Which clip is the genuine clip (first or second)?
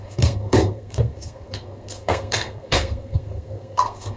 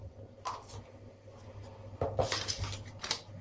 second